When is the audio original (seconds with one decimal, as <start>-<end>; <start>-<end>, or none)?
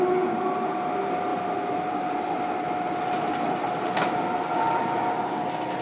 0.0-1.3; 4.8-5.8